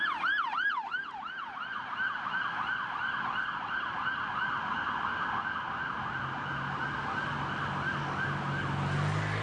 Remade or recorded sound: recorded